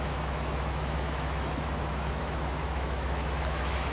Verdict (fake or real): fake